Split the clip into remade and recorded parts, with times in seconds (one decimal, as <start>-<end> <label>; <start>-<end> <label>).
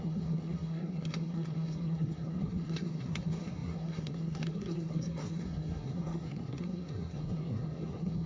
0.0-8.3 remade